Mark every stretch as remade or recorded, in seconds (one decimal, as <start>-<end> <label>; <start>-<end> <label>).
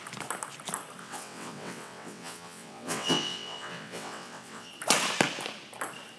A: 0.0-1.0 recorded; 1.0-4.7 remade; 4.7-6.2 recorded